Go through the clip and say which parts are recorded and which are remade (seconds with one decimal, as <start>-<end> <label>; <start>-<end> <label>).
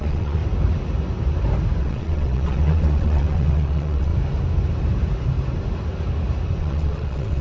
0.0-0.4 remade; 0.4-1.8 recorded; 1.8-4.1 remade; 4.1-6.6 recorded; 6.6-7.4 remade